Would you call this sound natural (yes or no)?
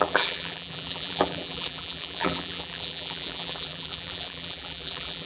no